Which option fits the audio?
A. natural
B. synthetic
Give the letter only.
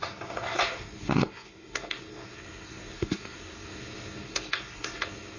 B